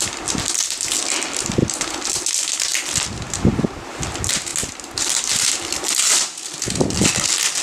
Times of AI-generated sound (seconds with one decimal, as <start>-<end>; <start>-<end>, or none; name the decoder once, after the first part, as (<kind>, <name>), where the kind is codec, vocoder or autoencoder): none